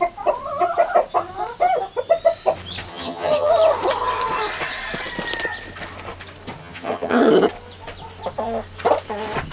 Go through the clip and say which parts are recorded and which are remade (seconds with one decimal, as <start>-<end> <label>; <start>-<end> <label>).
0.0-2.9 recorded; 2.9-3.5 remade; 3.5-6.6 recorded; 6.6-7.3 remade; 7.3-9.5 recorded